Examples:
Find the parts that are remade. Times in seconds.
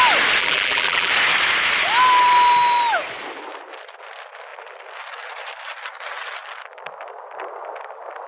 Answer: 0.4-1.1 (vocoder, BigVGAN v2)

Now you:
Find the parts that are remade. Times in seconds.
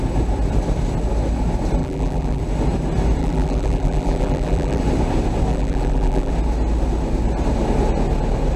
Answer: 1.8-2.4 (vocoder, BigVGAN v2); 3.2-4.8; 5.5-6.3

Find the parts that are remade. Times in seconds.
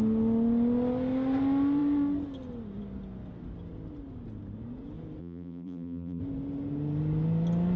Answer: 5.2-6.2 (vocoder, BigVGAN v2)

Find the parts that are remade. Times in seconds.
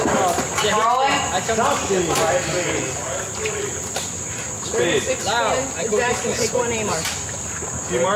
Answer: 1.8-6.4 (vocoder, BigVGAN v2)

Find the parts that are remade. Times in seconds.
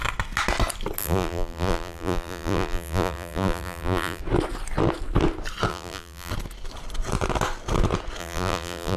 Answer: 1.0-4.2 (vocoder, BigVGAN v2); 5.7-6.3; 8.2-9.0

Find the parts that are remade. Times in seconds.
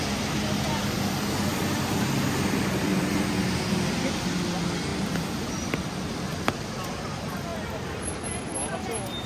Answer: 1.5-3.0 (vocoder, BigVGAN v2); 4.9-5.8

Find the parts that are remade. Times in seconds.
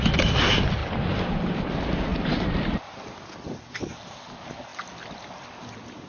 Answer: 0.8-1.7 (vocoder, BigVGAN v2); 2.1-3.2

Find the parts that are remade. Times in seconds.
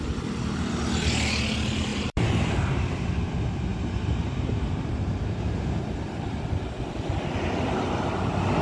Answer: 1.9-2.5 (vocoder, BigVGAN v2); 3.7-5.6